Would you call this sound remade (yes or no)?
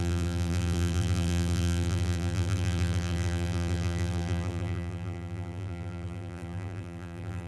yes